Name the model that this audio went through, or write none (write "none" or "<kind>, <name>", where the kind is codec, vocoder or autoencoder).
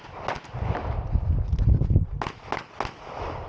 none